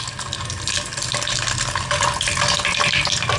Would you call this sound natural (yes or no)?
yes